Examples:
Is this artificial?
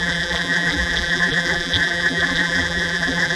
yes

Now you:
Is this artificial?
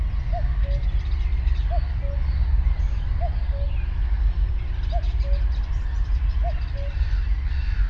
no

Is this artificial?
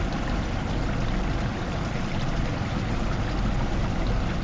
no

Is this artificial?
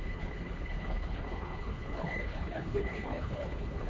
yes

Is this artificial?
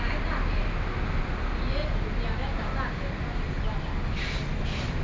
no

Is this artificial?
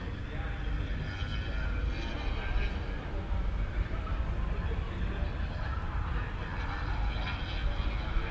no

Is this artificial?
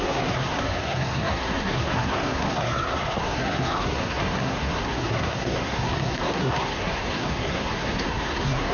yes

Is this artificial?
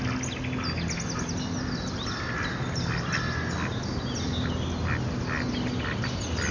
no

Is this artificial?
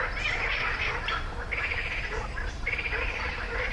no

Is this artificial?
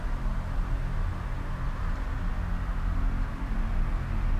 no